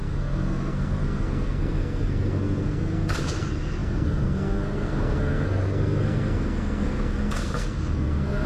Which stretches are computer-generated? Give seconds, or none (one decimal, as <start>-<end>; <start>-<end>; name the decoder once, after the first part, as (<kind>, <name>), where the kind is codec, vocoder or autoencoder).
0.0-8.5 (codec, SNAC)